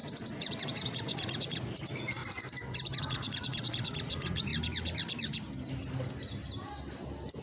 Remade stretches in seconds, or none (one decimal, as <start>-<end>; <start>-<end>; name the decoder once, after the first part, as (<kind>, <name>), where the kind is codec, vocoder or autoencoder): 0.0-2.2 (vocoder, Vocos); 3.0-4.5